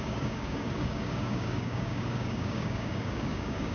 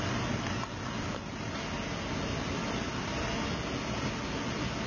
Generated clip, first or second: first